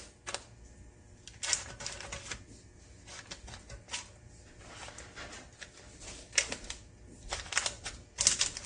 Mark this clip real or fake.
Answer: real